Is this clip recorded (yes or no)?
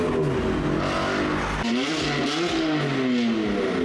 yes